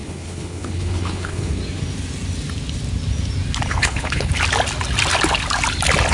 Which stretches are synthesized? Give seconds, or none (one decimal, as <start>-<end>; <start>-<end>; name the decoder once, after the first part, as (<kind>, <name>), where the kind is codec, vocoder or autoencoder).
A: 0.0-1.6 (codec, HILCodec); 3.7-4.3